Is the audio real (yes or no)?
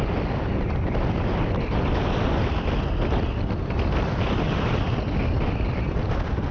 yes